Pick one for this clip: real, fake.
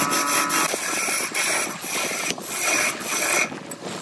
real